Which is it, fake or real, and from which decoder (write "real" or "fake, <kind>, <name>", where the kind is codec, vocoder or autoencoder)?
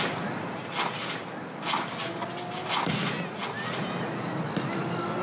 real